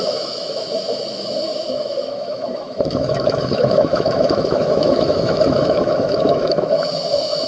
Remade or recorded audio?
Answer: remade